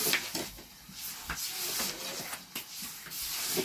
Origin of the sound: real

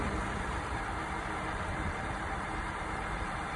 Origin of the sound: fake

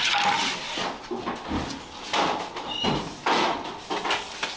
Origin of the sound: real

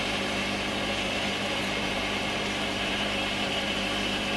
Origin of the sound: fake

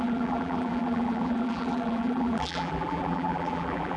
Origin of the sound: fake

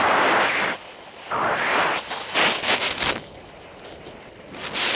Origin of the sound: real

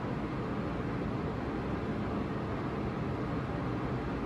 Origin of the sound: real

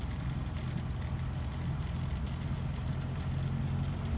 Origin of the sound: real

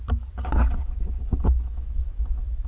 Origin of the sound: real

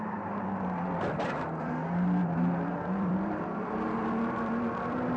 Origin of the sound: fake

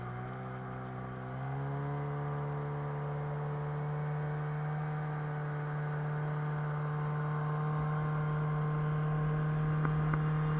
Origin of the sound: real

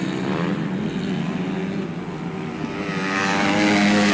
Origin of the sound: real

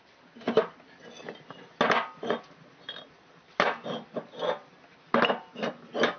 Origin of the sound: real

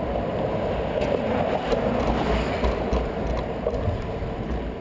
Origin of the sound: real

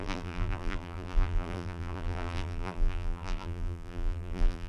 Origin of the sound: fake